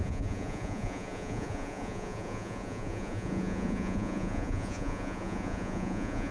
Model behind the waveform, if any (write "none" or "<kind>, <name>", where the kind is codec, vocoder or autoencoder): vocoder, Vocos